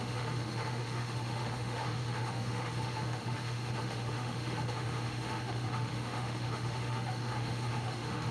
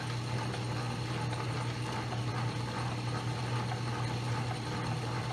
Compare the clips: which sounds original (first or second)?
second